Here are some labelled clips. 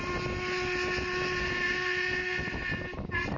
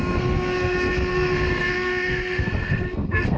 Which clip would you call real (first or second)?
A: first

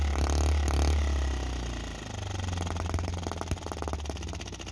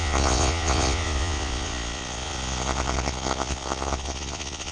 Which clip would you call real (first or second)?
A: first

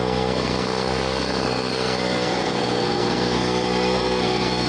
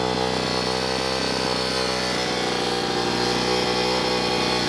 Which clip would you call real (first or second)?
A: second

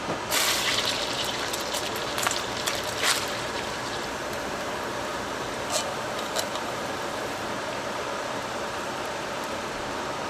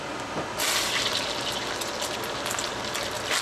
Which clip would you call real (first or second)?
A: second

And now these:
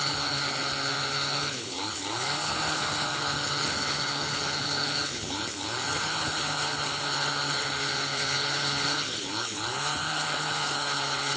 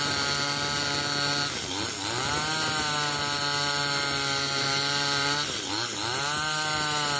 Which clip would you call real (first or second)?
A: second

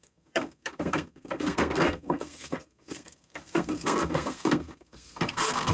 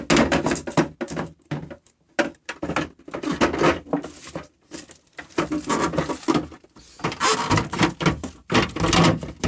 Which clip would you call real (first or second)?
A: second